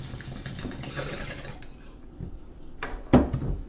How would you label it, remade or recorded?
recorded